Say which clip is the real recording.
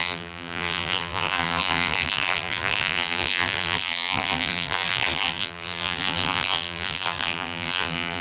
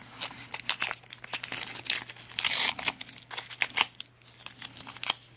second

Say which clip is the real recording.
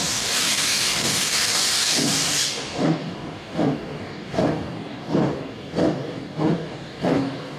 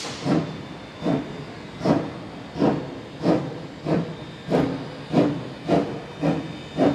second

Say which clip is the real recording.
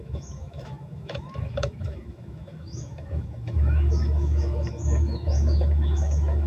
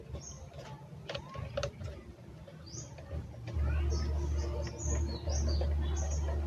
second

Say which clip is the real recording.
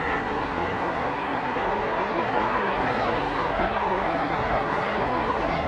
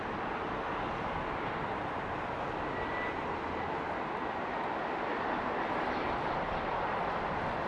second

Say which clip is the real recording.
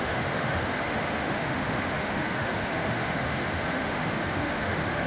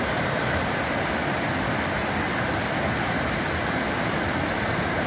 second